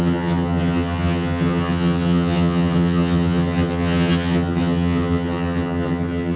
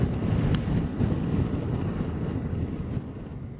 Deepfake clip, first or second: first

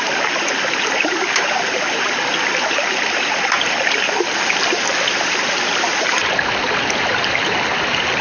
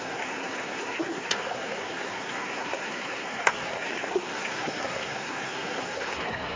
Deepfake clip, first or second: second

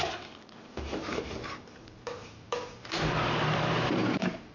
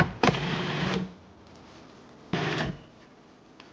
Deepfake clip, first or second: first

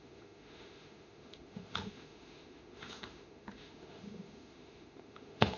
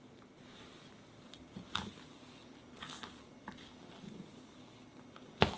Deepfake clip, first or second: first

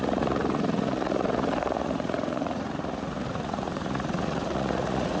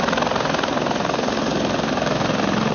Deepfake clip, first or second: first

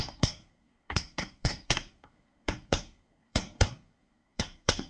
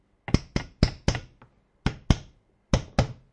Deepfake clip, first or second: first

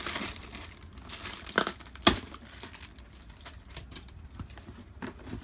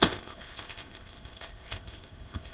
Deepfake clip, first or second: second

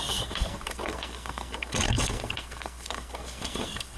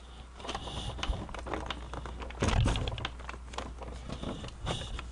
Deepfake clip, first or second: first